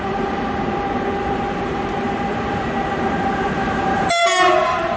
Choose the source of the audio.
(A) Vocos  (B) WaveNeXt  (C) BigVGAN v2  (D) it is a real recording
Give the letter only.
C